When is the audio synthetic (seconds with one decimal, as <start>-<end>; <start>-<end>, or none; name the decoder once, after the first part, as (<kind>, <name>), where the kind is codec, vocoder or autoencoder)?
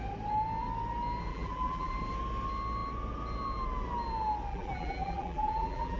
1.3-1.9 (vocoder, BigVGAN v2); 4.5-6.0